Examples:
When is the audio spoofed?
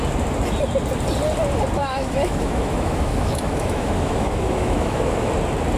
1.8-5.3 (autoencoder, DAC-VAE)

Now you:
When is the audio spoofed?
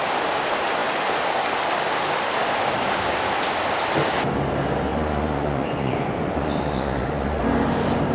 4.9-7.4 (vocoder, Vocos)